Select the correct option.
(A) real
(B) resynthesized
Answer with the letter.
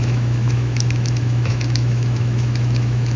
B